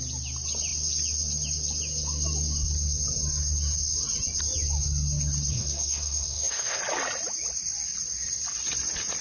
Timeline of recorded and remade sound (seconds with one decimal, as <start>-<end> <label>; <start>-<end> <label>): 0.0-5.5 recorded; 5.5-6.8 remade; 6.8-9.2 recorded